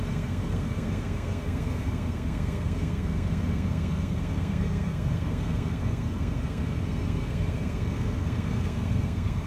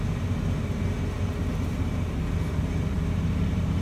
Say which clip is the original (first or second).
second